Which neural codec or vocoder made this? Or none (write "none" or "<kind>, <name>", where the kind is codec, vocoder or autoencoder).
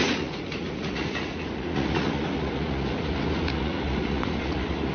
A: vocoder, Vocos